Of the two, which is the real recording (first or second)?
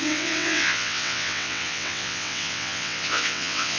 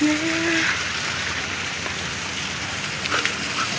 second